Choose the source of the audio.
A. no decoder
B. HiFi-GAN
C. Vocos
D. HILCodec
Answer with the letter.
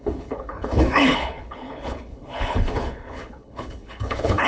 D